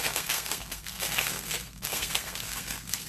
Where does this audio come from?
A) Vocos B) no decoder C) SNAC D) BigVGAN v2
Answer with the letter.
C